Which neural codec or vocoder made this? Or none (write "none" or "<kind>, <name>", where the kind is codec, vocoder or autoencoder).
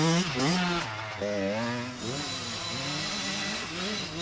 none